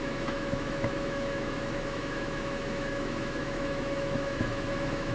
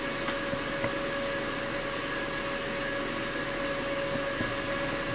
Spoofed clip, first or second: first